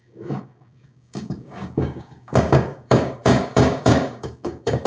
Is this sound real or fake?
fake